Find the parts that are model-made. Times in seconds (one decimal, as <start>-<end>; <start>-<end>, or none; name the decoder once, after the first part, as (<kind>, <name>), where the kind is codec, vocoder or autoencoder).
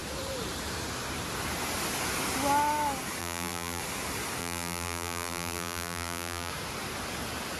3.2-3.8 (vocoder, BigVGAN v2); 4.4-6.5